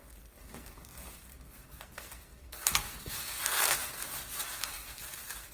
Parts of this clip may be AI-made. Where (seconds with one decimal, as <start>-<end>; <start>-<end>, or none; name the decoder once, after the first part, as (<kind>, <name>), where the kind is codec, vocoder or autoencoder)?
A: 0.0-5.5 (codec, SNAC)